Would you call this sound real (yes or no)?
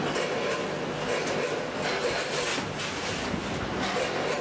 yes